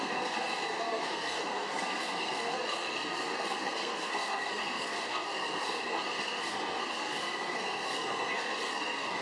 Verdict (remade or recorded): remade